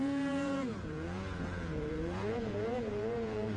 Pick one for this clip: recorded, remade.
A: remade